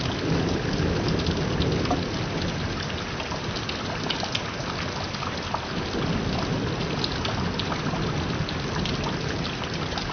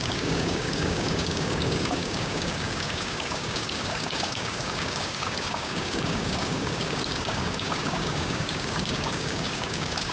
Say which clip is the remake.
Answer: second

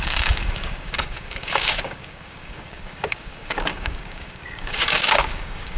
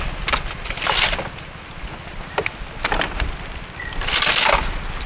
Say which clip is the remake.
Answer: first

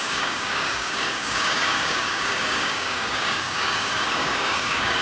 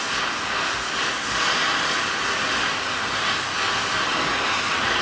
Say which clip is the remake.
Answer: first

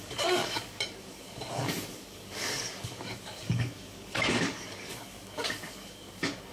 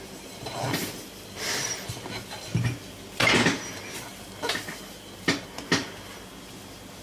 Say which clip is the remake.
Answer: first